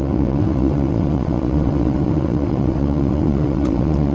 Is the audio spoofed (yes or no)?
yes